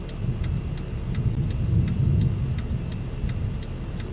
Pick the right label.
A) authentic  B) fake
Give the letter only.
A